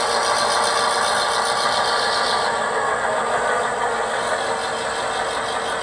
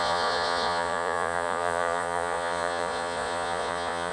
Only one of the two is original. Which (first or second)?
first